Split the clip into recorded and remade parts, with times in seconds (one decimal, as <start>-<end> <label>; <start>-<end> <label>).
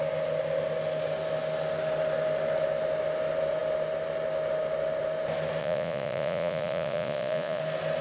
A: 0.0-5.6 recorded; 5.6-7.6 remade; 7.6-8.0 recorded